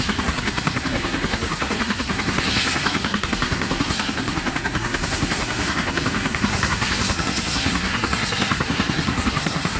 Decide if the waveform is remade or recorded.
remade